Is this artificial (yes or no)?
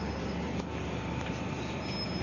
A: yes